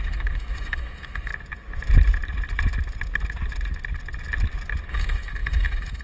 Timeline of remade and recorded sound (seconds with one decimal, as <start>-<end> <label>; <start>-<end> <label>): 0.0-1.3 remade; 1.3-4.9 recorded; 4.9-6.0 remade